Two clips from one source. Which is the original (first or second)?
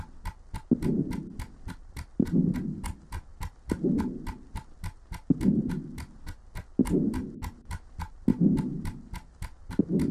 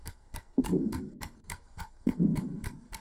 first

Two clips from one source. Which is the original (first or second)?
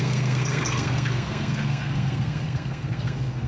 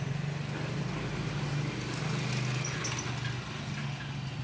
second